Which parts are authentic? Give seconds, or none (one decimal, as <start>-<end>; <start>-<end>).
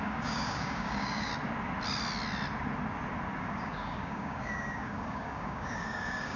1.3-3.4